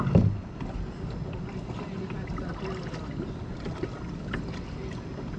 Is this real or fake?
real